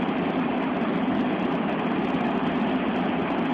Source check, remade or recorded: recorded